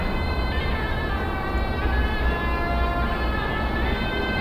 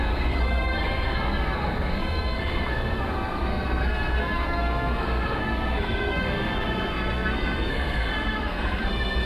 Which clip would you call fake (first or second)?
second